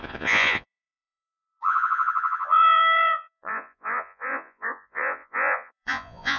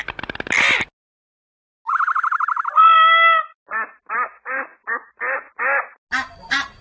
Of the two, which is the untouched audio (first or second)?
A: second